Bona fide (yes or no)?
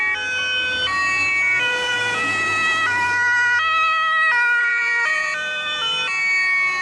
yes